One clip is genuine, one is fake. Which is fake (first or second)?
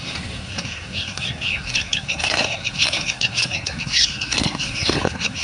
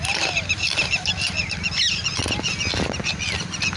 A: first